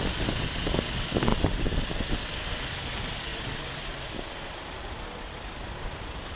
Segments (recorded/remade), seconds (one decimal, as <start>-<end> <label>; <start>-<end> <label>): 0.0-6.4 recorded

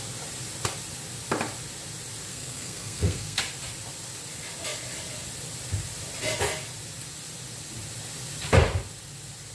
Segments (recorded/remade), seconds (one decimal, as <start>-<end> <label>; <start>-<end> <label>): 0.0-2.3 recorded; 2.3-3.4 remade; 3.4-9.5 recorded

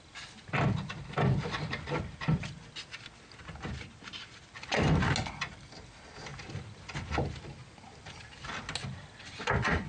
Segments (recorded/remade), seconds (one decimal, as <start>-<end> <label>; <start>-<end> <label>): 0.0-9.9 recorded

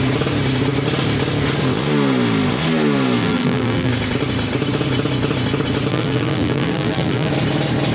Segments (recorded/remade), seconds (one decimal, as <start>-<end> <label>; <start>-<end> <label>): 0.0-3.2 recorded; 3.2-3.9 remade; 3.9-5.9 recorded; 5.9-7.3 remade; 7.3-7.9 recorded